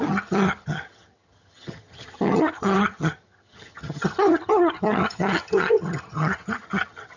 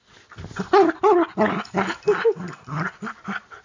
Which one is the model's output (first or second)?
first